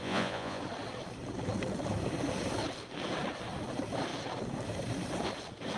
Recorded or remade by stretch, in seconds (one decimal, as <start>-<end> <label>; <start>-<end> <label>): 0.0-0.6 remade; 0.6-5.8 recorded